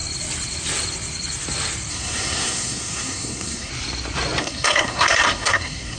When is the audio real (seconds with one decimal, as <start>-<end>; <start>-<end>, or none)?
0.0-1.9; 3.7-4.4